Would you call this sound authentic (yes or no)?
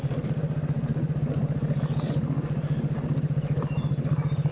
yes